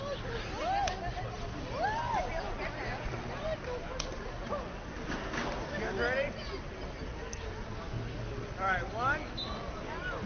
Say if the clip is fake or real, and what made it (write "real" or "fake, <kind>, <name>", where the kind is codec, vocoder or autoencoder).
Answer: real